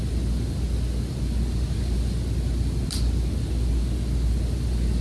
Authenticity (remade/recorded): recorded